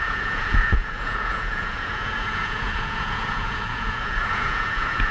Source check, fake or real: fake